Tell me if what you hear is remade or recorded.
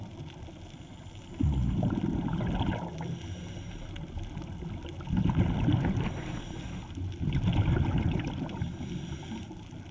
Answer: recorded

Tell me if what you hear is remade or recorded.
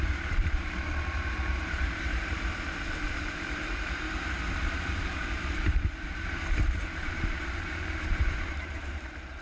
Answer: remade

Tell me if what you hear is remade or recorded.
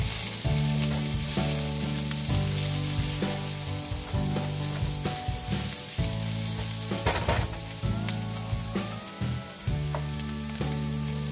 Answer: recorded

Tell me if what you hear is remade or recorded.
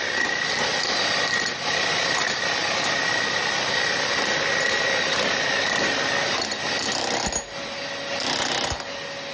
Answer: recorded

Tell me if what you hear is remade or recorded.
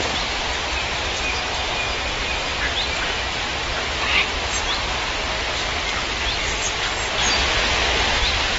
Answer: recorded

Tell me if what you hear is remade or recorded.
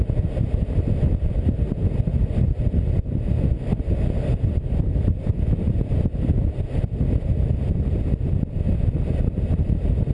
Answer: remade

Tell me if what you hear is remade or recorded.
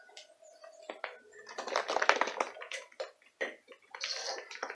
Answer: recorded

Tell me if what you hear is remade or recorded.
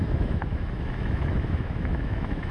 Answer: remade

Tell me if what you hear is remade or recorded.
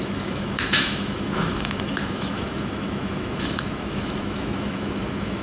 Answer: remade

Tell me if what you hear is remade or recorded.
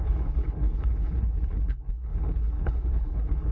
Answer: remade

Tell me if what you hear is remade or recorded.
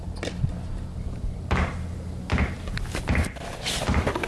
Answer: recorded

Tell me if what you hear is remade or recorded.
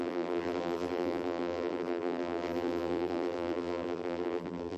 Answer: remade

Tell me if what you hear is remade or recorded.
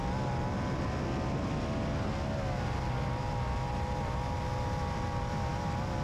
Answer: recorded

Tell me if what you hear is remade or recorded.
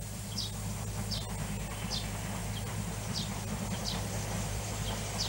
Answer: recorded